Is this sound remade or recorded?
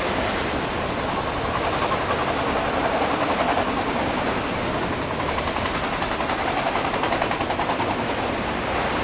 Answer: recorded